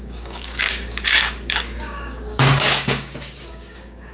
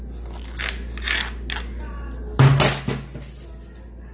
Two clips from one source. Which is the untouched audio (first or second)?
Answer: second